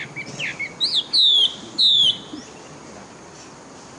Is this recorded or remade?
recorded